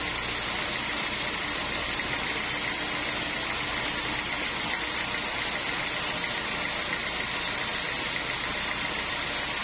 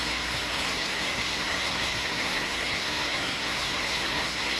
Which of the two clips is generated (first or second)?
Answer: second